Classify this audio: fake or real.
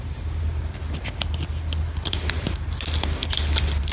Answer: real